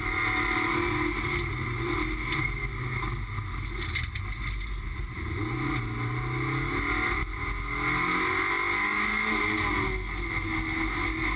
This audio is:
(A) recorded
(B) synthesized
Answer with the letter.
A